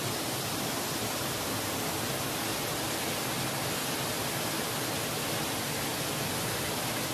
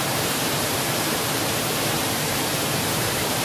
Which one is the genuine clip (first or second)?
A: first